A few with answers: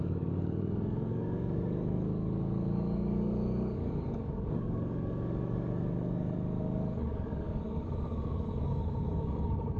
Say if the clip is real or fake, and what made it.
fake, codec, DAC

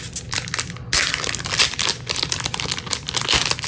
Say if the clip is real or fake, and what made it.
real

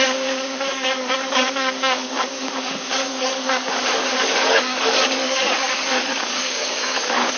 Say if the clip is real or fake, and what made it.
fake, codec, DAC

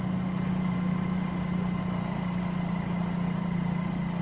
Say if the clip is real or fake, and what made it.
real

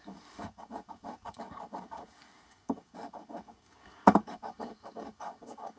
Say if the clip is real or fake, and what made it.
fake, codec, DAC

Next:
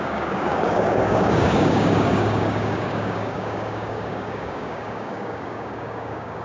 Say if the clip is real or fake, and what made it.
fake, codec, DAC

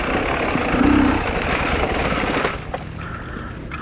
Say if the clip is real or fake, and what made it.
real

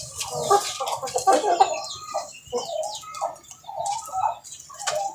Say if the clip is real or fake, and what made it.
real